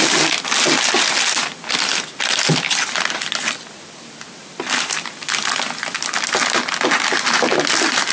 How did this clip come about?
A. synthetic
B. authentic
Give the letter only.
B